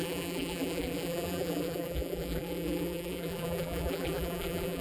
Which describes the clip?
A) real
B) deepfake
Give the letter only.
B